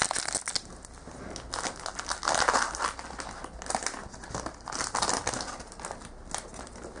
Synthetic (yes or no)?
no